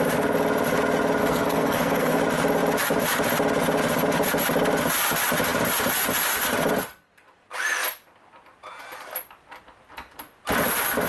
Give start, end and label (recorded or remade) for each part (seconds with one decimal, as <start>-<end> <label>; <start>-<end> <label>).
0.0-1.2 recorded; 1.2-2.2 remade; 2.2-11.1 recorded